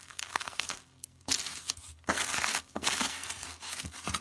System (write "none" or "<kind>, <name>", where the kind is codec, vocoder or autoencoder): codec, SNAC